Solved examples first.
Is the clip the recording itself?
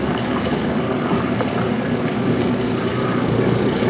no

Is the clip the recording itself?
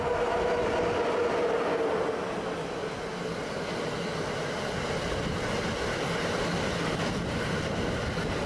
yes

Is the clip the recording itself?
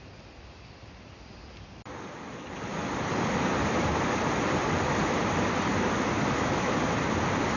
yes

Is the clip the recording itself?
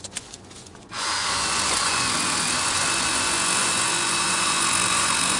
no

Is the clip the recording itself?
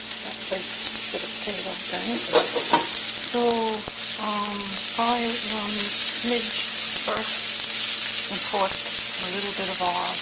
yes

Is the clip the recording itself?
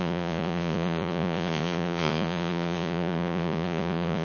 no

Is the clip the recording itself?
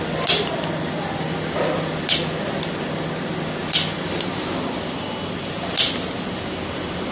yes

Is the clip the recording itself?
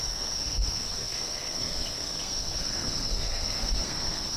no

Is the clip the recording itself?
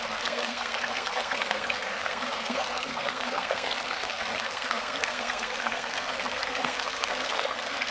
no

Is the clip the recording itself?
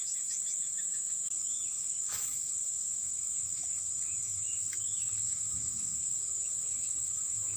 no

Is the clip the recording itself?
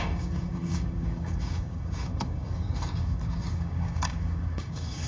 no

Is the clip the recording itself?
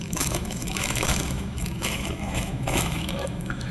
no